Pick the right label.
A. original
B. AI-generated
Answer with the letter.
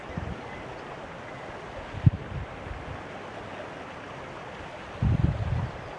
A